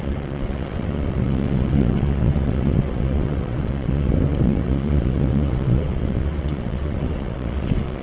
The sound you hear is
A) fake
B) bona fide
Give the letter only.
A